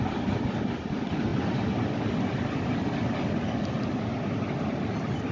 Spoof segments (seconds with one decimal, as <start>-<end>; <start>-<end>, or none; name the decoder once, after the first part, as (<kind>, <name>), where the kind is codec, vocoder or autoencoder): none